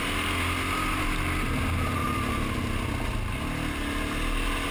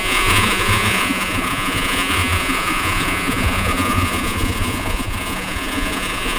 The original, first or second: first